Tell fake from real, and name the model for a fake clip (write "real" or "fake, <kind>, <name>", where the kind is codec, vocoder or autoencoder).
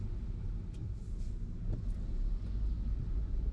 real